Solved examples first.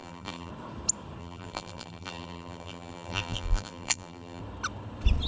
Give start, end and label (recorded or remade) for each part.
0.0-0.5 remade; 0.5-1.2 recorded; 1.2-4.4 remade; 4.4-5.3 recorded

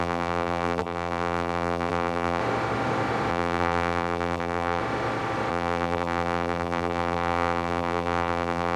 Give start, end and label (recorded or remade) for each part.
0.0-2.4 remade; 2.4-3.3 recorded; 3.3-4.8 remade; 4.8-5.5 recorded; 5.5-8.8 remade